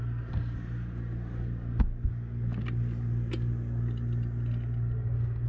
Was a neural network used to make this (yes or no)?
no